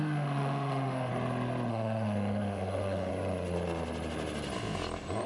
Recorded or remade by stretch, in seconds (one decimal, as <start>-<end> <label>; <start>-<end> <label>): 0.0-1.1 remade; 1.1-1.7 recorded; 1.7-3.1 remade; 3.1-5.3 recorded